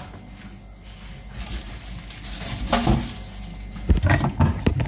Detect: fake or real real